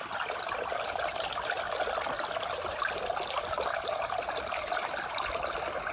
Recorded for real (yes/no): yes